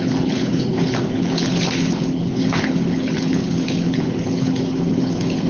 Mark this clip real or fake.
fake